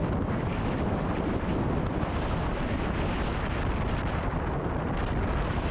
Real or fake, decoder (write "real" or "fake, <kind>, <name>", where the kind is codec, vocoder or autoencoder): real